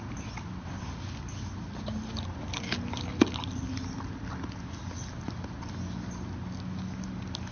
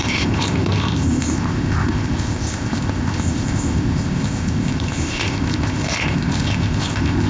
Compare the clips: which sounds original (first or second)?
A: first